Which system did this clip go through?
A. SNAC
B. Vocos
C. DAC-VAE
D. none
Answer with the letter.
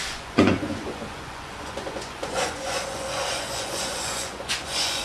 B